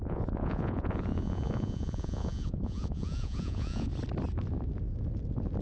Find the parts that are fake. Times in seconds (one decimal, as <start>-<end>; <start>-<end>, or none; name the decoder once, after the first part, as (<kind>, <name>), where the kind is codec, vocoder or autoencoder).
0.0-3.9 (vocoder, Vocos)